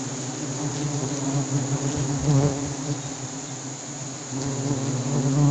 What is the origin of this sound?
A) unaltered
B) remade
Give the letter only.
A